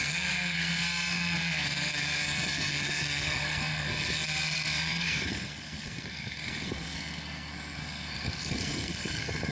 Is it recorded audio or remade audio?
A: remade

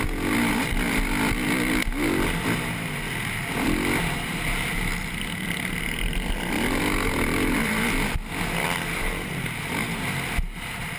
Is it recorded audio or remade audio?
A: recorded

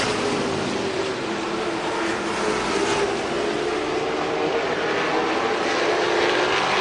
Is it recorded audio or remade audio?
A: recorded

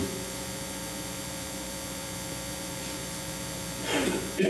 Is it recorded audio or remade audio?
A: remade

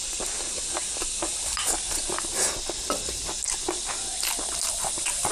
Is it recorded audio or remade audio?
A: recorded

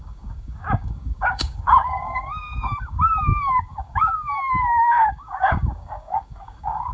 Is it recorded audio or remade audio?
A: remade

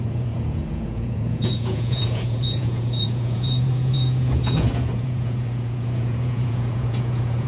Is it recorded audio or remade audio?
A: remade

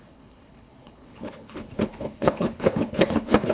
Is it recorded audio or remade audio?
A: remade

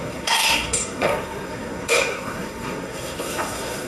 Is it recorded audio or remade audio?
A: remade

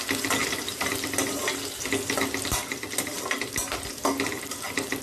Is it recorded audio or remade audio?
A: recorded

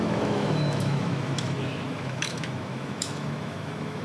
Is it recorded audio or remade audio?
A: remade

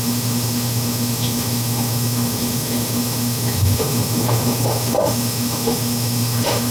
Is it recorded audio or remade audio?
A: remade